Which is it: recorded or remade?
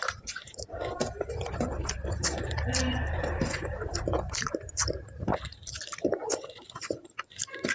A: remade